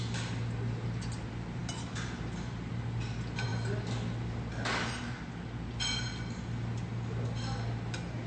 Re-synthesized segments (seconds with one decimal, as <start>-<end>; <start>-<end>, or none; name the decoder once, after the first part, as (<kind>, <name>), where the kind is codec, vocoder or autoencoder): none